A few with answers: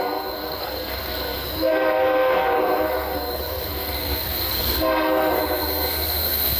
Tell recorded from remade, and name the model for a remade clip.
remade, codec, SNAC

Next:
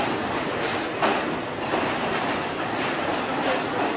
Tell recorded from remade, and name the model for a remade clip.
recorded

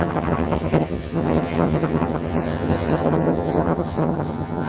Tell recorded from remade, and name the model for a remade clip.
remade, vocoder, HiFi-GAN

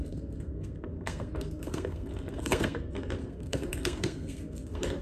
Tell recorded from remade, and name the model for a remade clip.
remade, codec, SNAC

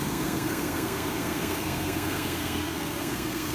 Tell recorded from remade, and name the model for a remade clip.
remade, codec, SNAC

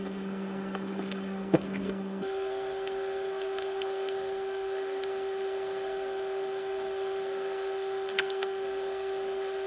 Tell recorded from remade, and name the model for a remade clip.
remade, codec, SNAC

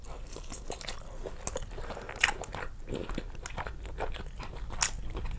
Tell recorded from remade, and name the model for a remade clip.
recorded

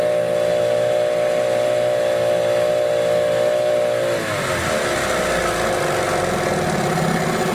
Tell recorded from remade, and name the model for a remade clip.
recorded